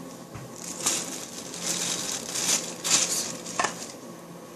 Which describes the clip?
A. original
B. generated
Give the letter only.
A